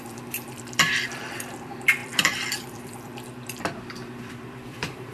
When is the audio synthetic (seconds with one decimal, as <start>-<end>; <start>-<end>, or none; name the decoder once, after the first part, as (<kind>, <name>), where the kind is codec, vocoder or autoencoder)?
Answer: 0.0-5.1 (vocoder, BigVGAN v2)

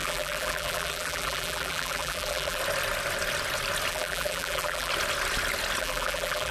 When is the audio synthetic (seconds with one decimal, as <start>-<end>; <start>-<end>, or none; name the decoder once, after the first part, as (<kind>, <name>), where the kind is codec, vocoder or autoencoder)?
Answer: 0.0-2.6 (vocoder, BigVGAN v2); 3.9-4.9; 5.8-6.5